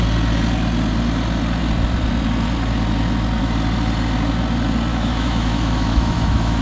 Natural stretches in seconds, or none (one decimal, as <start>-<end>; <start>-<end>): 0.0-4.9